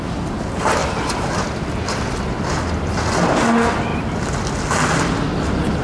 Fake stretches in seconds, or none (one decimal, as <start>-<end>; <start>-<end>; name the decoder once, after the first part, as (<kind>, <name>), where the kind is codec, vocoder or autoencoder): 0.8-2.6 (vocoder, BigVGAN v2); 3.9-4.7